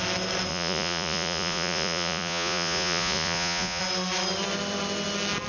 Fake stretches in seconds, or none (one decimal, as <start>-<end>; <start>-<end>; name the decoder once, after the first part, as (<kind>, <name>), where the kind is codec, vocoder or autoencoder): 0.5-3.8 (vocoder, Vocos)